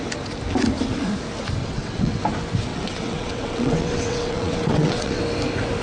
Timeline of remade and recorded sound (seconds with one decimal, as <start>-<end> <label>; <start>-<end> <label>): 0.0-1.6 recorded; 1.6-2.2 remade; 2.2-2.7 recorded; 2.7-5.2 remade; 5.2-5.8 recorded